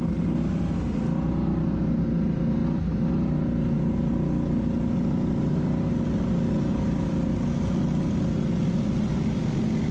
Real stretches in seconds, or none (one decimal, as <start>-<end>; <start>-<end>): 0.0-9.9